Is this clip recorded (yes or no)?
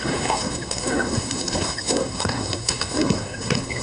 no